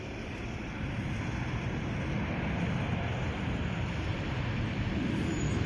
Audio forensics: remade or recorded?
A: recorded